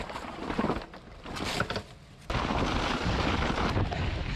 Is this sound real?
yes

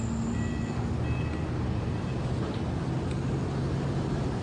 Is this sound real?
yes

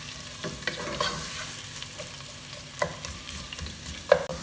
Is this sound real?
yes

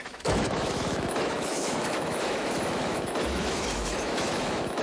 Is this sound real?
no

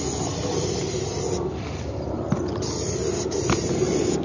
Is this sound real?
yes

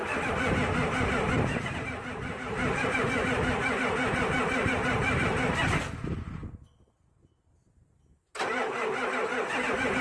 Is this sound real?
yes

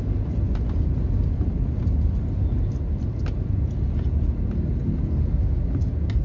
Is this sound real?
yes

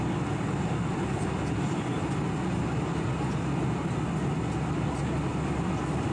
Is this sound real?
yes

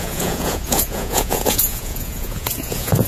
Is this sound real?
no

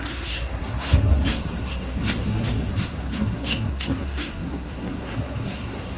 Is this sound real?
no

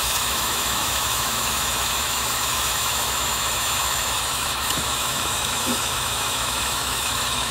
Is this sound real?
no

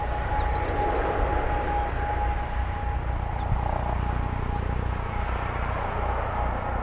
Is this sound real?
yes